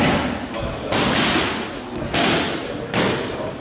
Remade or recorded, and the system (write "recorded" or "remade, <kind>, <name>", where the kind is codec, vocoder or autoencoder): recorded